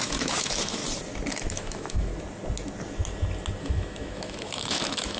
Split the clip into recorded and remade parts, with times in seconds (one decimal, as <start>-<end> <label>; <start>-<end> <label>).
0.0-0.8 remade; 0.8-1.3 recorded; 1.3-2.1 remade; 2.1-3.6 recorded; 3.6-5.2 remade